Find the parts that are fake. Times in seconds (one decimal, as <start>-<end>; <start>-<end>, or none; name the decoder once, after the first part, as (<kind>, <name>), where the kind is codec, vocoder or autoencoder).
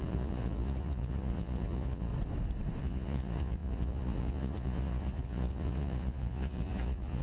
0.0-2.1 (vocoder, Vocos); 2.8-7.2